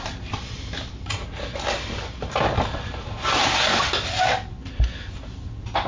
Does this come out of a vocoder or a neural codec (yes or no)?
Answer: no